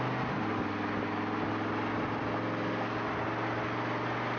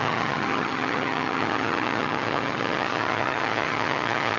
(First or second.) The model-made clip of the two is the second